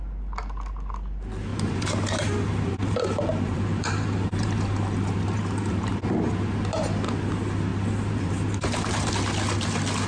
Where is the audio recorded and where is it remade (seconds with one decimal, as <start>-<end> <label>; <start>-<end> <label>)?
0.0-1.5 recorded; 1.5-5.9 remade; 5.9-7.7 recorded; 7.7-9.1 remade; 9.1-10.1 recorded